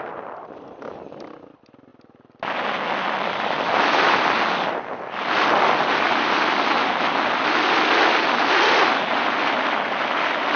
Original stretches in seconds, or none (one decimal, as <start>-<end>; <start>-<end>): 1.9-4.5